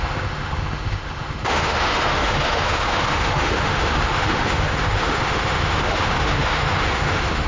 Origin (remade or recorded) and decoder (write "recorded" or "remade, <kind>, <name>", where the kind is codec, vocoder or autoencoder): remade, autoencoder, DAC-VAE